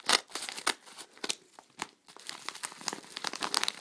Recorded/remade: recorded